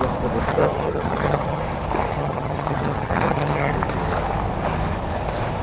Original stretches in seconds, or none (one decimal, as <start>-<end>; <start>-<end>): 0.0-0.5; 1.6-2.1; 3.7-5.6